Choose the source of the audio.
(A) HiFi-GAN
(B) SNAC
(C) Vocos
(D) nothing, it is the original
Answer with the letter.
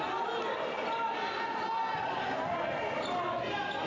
D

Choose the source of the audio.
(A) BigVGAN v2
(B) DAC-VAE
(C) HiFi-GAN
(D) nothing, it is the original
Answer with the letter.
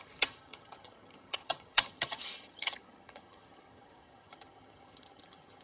C